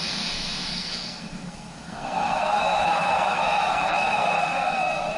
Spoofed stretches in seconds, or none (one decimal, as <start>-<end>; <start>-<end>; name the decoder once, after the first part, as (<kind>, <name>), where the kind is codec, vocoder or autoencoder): 0.0-5.2 (codec, SNAC)

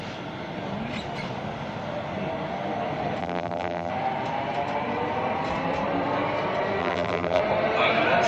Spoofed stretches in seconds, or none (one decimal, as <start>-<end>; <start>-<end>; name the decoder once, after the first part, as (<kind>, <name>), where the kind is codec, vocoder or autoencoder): 3.2-3.9 (vocoder, BigVGAN v2); 6.8-7.4

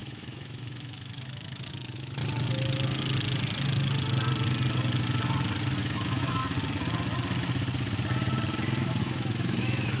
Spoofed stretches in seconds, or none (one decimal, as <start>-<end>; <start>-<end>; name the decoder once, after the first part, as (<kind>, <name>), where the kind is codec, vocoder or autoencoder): 0.0-2.2 (autoencoder, DAC-VAE); 5.8-6.4; 9.0-10.0

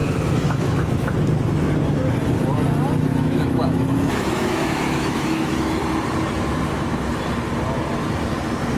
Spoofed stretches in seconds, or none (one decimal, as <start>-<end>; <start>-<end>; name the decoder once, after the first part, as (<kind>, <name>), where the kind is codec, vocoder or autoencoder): 0.0-1.1 (autoencoder, DAC-VAE); 3.1-5.5

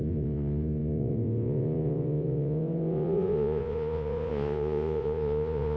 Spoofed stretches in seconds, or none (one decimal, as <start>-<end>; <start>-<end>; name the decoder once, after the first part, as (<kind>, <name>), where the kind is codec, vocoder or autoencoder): 0.0-5.8 (vocoder, Vocos)

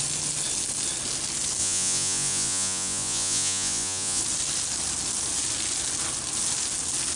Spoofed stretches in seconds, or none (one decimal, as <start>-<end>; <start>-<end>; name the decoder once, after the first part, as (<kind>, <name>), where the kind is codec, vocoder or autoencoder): 1.6-4.2 (vocoder, Vocos)

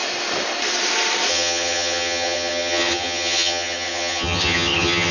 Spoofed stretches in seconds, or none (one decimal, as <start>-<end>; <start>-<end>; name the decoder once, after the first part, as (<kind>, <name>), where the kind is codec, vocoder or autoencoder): 1.3-5.1 (vocoder, HiFi-GAN)

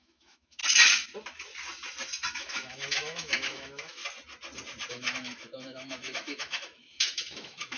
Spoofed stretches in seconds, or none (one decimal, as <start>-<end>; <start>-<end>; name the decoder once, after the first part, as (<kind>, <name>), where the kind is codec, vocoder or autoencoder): 0.0-0.6 (autoencoder, DAC-VAE); 2.3-4.0; 4.9-7.8